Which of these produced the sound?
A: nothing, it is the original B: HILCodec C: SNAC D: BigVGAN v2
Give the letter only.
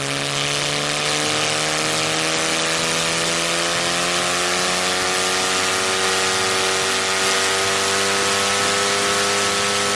A